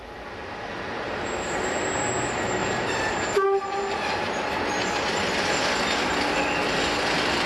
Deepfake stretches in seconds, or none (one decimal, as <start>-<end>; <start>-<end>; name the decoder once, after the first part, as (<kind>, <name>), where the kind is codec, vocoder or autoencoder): 2.6-4.3 (vocoder, BigVGAN v2)